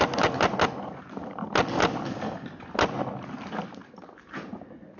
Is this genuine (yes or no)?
yes